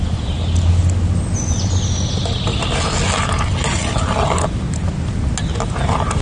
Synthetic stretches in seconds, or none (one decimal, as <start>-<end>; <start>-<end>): none